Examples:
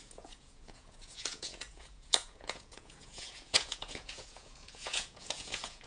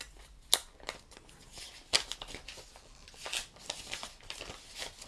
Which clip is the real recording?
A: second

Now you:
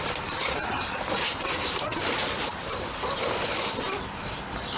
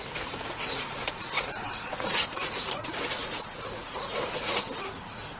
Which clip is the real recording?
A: first